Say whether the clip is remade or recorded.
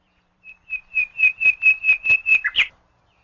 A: remade